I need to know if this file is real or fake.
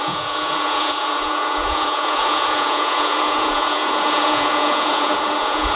fake